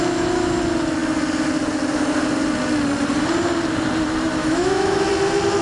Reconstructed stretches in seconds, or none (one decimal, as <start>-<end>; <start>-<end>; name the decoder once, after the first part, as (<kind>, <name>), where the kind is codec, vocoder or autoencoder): 4.4-5.1 (autoencoder, DAC-VAE)